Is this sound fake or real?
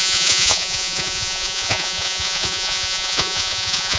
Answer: fake